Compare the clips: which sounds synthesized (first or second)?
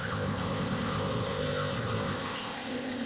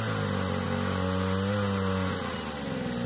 first